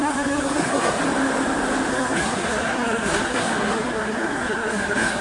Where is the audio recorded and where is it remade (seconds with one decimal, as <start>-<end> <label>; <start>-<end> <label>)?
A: 0.0-1.0 remade; 1.0-1.9 recorded; 1.9-5.2 remade